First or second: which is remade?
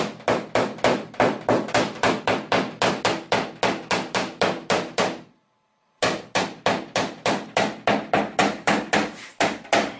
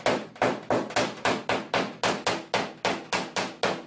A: first